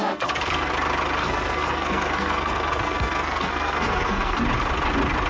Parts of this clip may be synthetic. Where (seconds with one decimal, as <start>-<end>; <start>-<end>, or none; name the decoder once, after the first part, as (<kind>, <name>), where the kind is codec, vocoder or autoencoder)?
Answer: 0.0-0.7 (codec, SNAC); 1.2-4.4